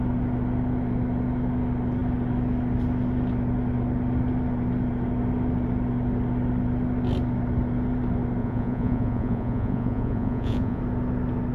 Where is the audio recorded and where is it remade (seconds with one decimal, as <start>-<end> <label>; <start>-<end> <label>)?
0.0-8.4 recorded; 8.4-10.8 remade; 10.8-11.5 recorded